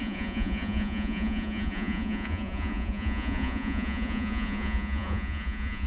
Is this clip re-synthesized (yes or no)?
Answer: yes